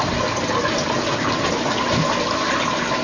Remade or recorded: recorded